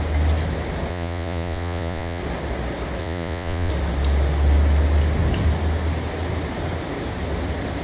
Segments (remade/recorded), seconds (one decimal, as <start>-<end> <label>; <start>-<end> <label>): 0.0-0.9 recorded; 0.9-2.2 remade; 2.2-3.0 recorded; 3.0-3.7 remade; 3.7-7.8 recorded